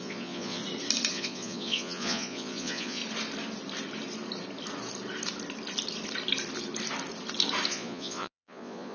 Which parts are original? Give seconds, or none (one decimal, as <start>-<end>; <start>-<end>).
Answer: 0.6-1.1; 3.0-7.7